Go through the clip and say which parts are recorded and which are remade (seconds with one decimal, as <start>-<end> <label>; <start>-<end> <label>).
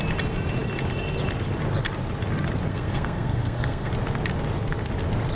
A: 0.0-2.7 recorded; 2.7-3.9 remade; 3.9-5.3 recorded